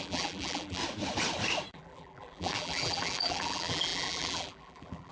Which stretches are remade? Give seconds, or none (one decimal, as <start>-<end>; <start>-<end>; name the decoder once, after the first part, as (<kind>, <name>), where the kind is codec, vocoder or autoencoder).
0.0-0.8 (vocoder, BigVGAN v2); 1.7-5.1